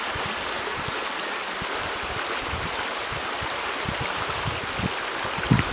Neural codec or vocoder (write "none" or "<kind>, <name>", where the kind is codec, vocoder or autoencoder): none